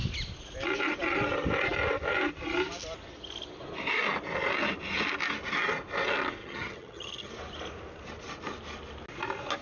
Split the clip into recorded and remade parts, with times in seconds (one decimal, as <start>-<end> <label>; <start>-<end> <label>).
0.0-6.4 recorded; 6.4-7.3 remade; 7.3-9.6 recorded